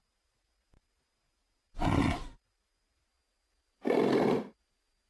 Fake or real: real